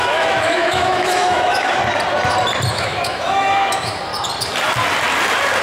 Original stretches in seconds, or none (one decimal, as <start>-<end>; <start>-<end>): 1.8-2.7; 4.1-5.6